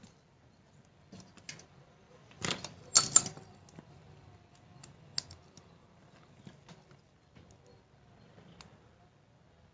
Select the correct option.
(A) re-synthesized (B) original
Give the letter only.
B